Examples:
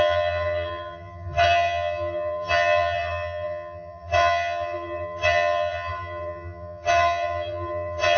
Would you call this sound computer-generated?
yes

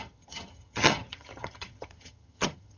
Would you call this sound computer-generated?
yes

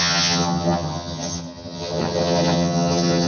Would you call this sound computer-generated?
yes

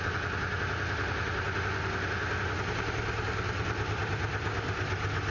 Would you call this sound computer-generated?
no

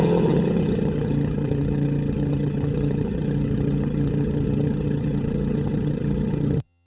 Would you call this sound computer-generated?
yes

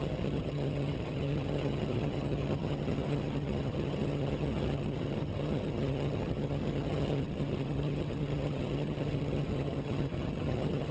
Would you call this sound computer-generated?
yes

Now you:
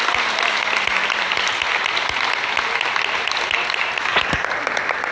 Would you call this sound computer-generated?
no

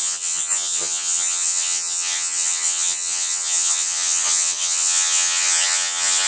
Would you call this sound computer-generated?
yes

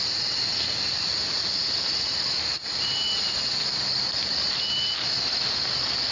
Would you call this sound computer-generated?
no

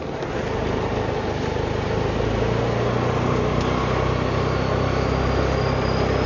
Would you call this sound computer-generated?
no